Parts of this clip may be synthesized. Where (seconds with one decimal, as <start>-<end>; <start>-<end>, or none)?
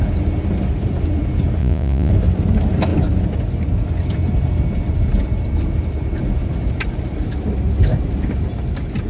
1.6-2.1